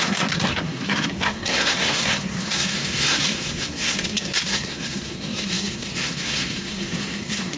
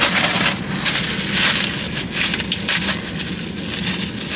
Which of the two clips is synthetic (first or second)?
first